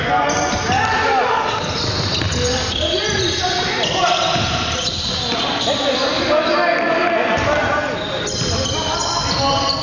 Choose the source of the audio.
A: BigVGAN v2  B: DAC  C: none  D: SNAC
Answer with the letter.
C